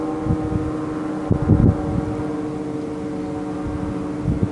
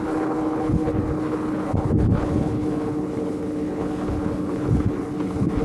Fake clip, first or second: second